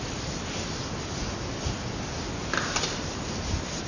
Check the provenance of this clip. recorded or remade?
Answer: recorded